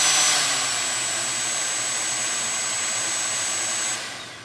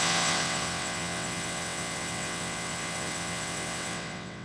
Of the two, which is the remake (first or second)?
second